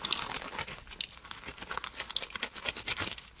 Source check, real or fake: real